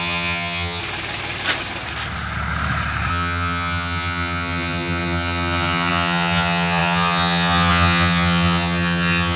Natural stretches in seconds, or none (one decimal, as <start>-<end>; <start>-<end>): 0.8-3.1

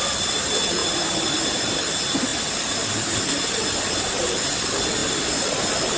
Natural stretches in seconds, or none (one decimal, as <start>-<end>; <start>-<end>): 0.0-6.0

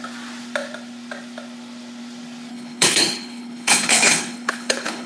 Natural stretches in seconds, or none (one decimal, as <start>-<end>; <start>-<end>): 0.0-2.5

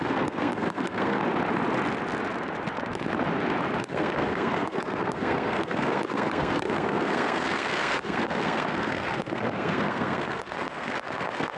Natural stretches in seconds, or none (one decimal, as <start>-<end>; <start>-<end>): 1.2-3.8

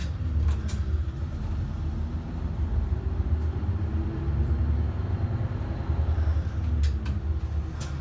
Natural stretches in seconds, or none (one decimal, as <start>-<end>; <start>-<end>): 4.6-8.0